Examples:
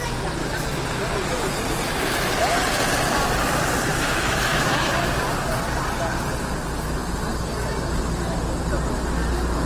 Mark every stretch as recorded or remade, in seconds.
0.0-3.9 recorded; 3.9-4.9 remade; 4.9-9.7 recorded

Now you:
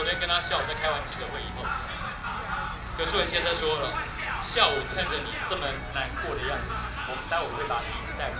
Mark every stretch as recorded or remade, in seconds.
0.0-8.4 recorded

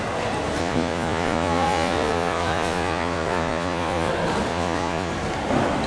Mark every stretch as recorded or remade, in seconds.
0.0-0.6 recorded; 0.6-4.1 remade; 4.1-4.5 recorded; 4.5-5.1 remade; 5.1-5.9 recorded

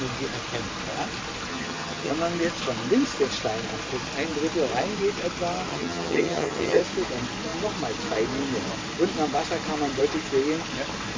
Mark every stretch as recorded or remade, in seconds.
0.0-1.5 recorded; 1.5-2.1 remade; 2.1-5.7 recorded; 5.7-6.8 remade; 6.8-11.2 recorded

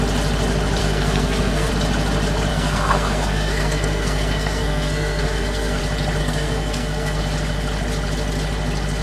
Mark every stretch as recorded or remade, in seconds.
0.0-0.8 recorded; 0.8-1.7 remade; 1.7-2.5 recorded; 2.5-5.8 remade; 5.8-6.2 recorded; 6.2-7.2 remade; 7.2-9.0 recorded

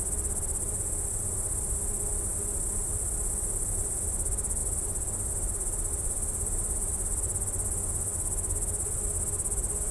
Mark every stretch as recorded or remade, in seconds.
0.0-9.9 recorded

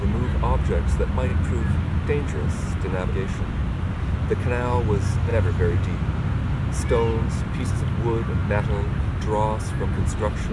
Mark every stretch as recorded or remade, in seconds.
0.0-10.5 recorded

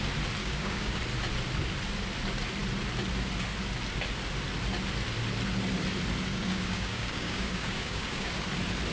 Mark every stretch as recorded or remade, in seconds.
0.0-0.4 recorded; 0.4-1.0 remade; 1.0-6.3 recorded; 6.3-8.3 remade; 8.3-8.9 recorded